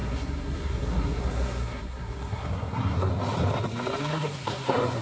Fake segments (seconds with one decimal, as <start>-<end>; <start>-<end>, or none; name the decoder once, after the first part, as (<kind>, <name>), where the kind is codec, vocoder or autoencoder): 0.0-3.1 (codec, SNAC); 4.0-5.0